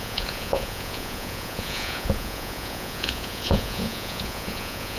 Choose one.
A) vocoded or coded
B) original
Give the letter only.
A